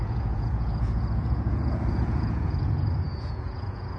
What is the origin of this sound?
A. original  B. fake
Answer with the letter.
B